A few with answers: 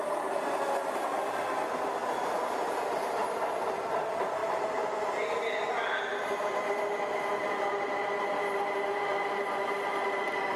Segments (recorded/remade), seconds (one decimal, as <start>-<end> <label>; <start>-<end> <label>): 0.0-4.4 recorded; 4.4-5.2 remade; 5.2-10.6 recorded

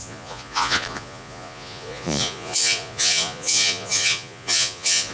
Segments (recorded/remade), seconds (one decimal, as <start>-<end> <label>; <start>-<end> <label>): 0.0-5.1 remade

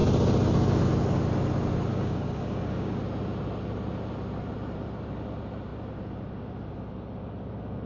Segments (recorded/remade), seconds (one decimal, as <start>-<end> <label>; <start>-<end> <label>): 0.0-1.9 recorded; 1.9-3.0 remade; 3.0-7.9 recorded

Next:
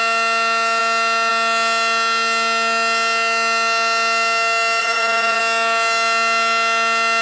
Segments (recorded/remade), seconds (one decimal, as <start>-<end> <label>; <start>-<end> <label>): 0.0-4.8 recorded; 4.8-5.4 remade; 5.4-7.2 recorded